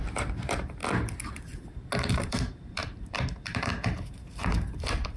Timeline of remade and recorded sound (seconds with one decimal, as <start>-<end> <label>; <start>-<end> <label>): 0.0-0.8 remade; 0.8-2.1 recorded; 2.1-5.2 remade